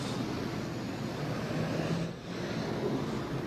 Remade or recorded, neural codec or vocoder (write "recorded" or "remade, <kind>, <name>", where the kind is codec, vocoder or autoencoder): recorded